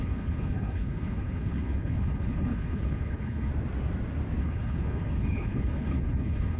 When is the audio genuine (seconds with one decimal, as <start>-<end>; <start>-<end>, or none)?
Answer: 3.5-4.4